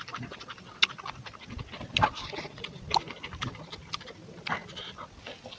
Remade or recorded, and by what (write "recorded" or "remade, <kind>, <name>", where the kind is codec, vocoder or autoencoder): recorded